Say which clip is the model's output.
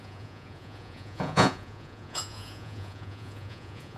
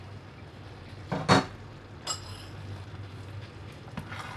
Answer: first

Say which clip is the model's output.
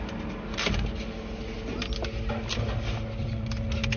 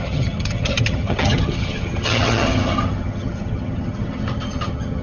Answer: second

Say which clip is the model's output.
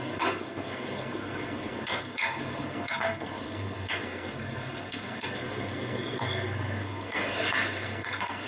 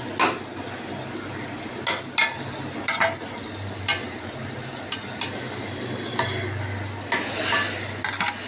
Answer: first